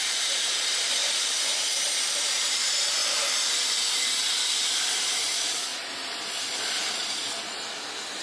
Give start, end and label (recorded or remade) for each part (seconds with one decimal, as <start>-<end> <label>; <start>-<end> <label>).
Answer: 0.0-3.0 remade; 3.0-4.4 recorded; 4.4-5.7 remade; 5.7-8.2 recorded